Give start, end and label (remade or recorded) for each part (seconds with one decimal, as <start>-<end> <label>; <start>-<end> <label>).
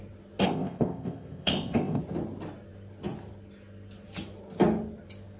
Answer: 0.0-0.4 recorded; 0.4-2.0 remade; 2.0-5.4 recorded